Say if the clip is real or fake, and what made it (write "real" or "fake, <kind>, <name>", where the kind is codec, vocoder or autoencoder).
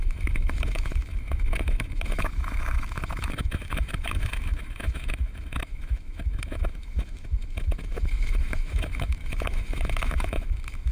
fake, autoencoder, DAC-VAE